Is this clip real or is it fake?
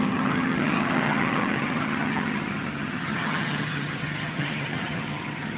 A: fake